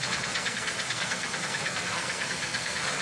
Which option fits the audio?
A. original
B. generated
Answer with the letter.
B